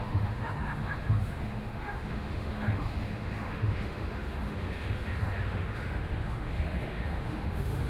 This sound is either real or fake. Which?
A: fake